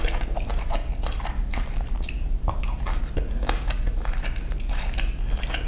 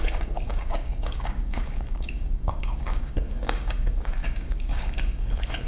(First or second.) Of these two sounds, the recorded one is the first